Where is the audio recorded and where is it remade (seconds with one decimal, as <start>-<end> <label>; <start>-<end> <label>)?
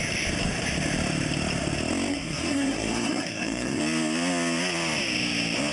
0.0-2.1 recorded; 2.1-3.8 remade; 3.8-5.7 recorded